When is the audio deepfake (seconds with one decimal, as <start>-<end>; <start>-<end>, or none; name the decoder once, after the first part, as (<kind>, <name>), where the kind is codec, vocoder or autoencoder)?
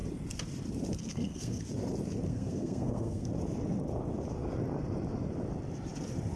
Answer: 1.1-1.6 (codec, SNAC); 2.3-3.3